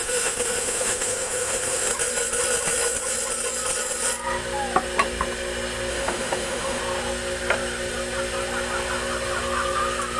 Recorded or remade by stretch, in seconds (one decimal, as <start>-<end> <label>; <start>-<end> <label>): 0.0-1.9 remade; 1.9-5.9 recorded; 5.9-6.8 remade; 6.8-10.2 recorded